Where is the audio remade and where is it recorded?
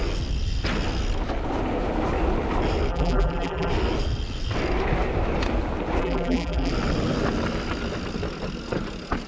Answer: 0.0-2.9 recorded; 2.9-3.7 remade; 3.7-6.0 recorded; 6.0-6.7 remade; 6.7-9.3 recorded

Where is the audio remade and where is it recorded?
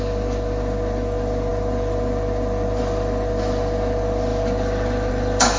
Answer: 0.0-5.6 recorded